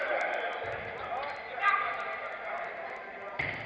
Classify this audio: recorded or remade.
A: recorded